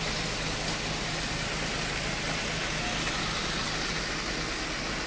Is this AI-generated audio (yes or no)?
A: no